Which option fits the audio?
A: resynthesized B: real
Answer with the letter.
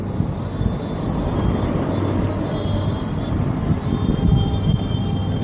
B